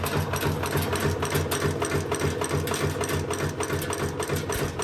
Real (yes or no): yes